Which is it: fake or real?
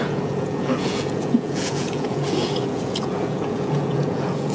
fake